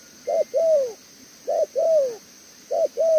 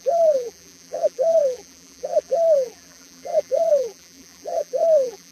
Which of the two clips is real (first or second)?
first